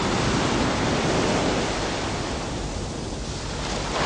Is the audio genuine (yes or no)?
yes